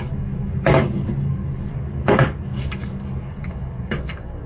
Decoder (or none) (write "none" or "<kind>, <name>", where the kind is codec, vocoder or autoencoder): codec, DAC